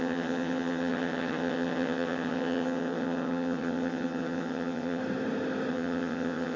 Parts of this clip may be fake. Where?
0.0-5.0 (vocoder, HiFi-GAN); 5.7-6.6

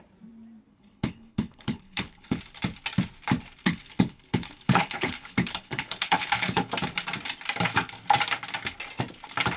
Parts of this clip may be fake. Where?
0.7-2.4 (codec, HILCodec); 3.6-6.7

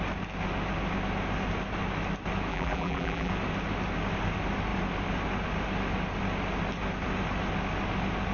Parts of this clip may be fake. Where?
2.5-3.3 (vocoder, BigVGAN v2)

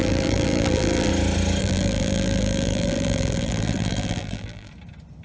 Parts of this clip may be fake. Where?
0.0-1.1 (vocoder, BigVGAN v2); 1.6-4.7

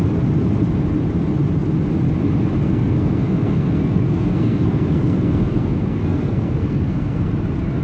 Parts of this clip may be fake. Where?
2.6-7.3 (codec, SNAC)

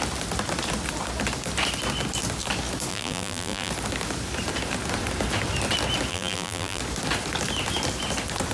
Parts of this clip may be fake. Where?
2.9-3.7 (vocoder, BigVGAN v2); 6.1-6.8